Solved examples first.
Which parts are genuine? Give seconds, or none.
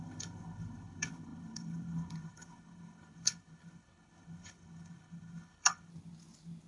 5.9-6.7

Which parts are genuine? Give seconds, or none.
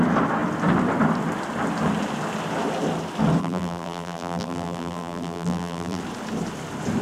0.0-3.4; 6.0-7.0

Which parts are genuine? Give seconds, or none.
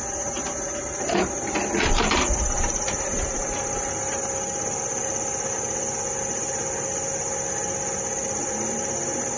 4.2-9.4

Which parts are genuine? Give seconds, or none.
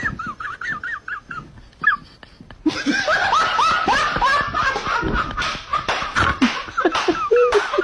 0.0-7.8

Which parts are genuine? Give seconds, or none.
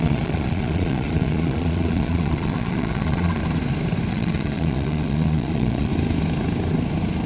3.4-4.1; 5.9-7.3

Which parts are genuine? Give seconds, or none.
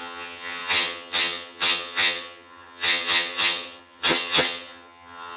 none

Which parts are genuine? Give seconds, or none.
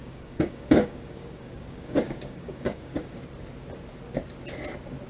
3.1-5.1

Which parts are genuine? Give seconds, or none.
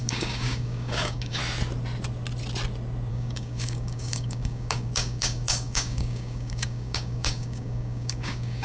1.4-3.1